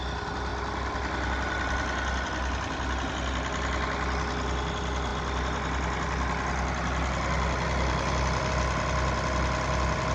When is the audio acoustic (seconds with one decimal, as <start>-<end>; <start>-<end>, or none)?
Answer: 0.0-10.1